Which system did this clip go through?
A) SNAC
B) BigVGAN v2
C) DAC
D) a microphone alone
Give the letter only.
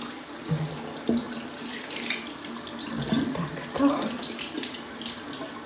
D